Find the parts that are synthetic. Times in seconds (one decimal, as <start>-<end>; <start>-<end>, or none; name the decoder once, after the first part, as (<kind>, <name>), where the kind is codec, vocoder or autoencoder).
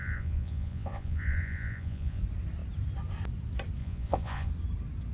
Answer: 0.0-2.2 (vocoder, Vocos); 3.8-4.5